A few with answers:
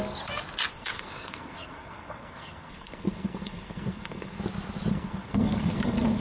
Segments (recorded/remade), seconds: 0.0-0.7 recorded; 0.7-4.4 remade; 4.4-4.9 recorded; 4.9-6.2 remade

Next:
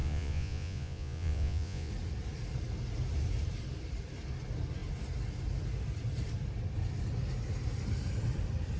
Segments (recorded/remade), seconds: 0.0-1.9 remade; 1.9-8.8 recorded

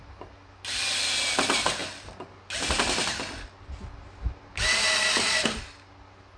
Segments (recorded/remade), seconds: 0.0-6.4 recorded

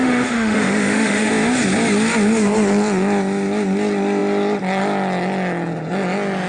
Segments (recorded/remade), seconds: 0.0-1.3 remade; 1.3-6.5 recorded

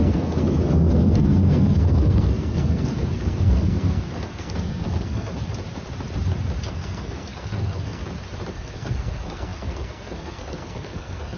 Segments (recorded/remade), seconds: 0.0-5.3 remade; 5.3-6.7 recorded; 6.7-8.0 remade; 8.0-8.5 recorded; 8.5-11.4 remade

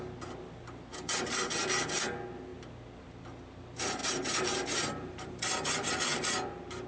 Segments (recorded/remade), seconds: 0.0-0.9 recorded; 0.9-1.5 remade; 1.5-4.0 recorded; 4.0-5.9 remade; 5.9-6.9 recorded